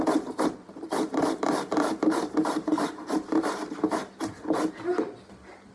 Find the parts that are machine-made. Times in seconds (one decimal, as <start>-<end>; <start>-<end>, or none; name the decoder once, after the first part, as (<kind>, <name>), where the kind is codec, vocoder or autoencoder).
0.7-4.1 (vocoder, BigVGAN v2)